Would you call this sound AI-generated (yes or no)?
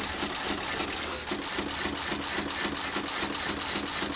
no